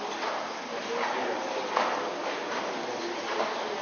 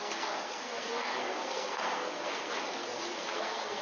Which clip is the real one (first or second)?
first